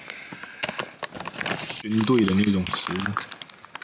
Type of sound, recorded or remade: recorded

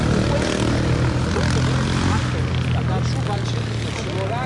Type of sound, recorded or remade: recorded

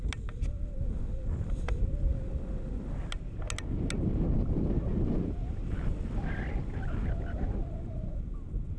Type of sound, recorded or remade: recorded